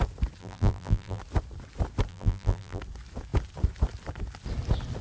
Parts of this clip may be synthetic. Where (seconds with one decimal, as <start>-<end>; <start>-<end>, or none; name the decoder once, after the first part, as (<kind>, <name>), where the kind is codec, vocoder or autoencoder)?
0.4-1.2 (vocoder, BigVGAN v2); 2.1-2.8